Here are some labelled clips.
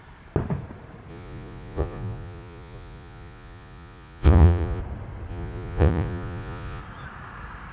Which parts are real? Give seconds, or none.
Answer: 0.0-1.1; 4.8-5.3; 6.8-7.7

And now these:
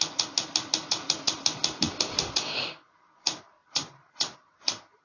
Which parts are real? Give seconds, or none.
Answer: 0.0-3.0

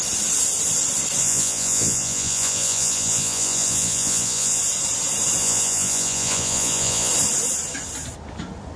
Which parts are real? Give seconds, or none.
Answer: 0.0-1.2; 4.6-5.4; 7.1-8.8